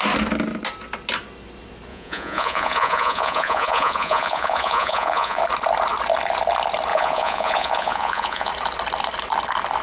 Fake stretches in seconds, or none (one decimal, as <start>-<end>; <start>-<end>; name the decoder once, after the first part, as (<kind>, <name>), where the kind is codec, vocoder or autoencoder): 1.9-5.4 (vocoder, Vocos); 6.9-8.5

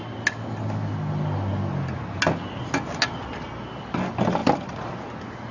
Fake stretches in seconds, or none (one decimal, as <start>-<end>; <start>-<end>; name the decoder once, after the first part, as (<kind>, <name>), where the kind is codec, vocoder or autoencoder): none

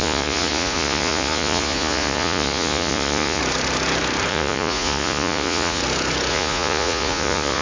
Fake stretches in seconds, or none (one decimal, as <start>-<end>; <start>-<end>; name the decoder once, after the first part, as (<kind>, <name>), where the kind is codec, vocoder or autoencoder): 0.0-3.4 (vocoder, Vocos); 4.3-5.8; 6.3-7.6